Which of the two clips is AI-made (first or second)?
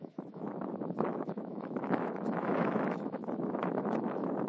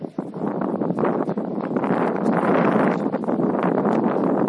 first